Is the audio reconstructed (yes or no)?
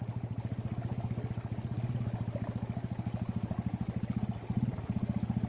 no